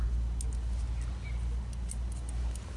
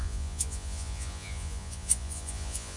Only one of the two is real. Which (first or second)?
first